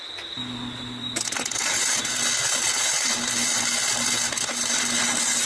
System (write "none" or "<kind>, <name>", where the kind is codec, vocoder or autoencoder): none